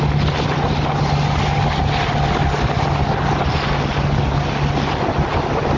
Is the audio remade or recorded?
recorded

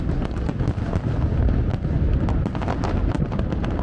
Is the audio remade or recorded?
recorded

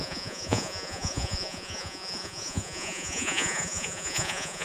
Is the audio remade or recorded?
remade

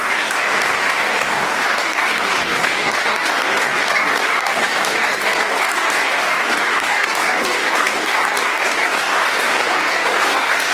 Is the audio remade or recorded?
remade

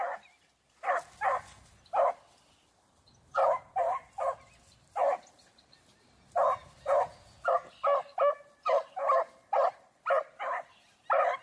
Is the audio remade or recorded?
recorded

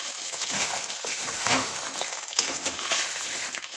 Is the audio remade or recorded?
remade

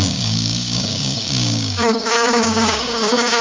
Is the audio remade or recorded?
remade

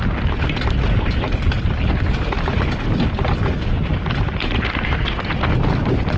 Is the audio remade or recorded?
recorded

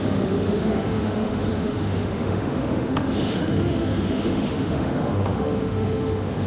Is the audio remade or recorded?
remade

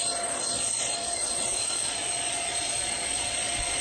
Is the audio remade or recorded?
remade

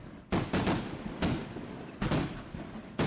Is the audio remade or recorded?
recorded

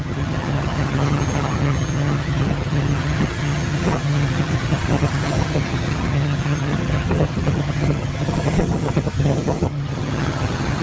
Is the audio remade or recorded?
remade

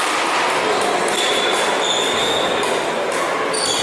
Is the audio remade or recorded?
recorded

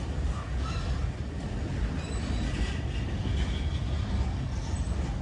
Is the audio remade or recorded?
recorded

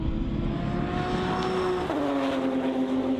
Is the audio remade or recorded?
recorded